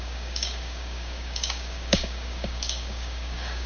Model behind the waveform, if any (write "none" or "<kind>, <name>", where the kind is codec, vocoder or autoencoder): codec, DAC